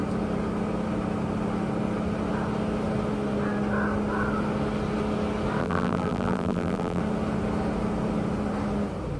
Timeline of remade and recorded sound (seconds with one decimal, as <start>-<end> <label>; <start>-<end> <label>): 0.0-5.6 recorded; 5.6-7.0 remade; 7.0-9.2 recorded